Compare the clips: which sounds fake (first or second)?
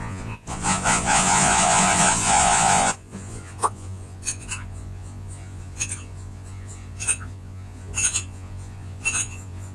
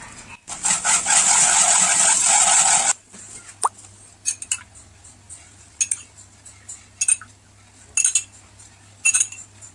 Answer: first